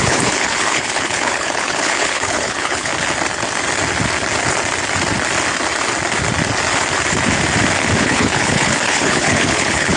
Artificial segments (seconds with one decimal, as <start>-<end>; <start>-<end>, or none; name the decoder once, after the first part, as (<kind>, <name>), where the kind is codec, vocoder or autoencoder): 0.0-2.9 (codec, HILCodec); 8.0-10.0